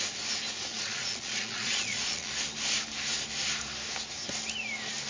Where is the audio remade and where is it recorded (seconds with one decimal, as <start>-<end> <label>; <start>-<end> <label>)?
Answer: 0.0-0.7 recorded; 0.7-2.3 remade; 2.3-5.1 recorded